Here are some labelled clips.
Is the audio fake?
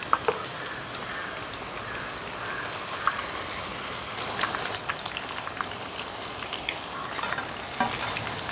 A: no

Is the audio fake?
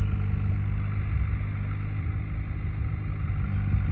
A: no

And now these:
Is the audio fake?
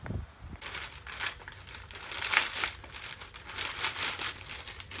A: no